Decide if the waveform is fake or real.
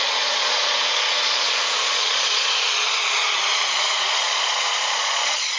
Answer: fake